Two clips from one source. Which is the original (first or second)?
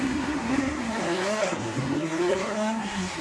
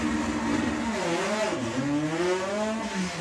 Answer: second